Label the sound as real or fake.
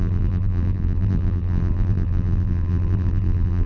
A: fake